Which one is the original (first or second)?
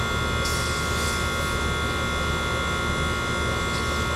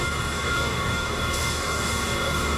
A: first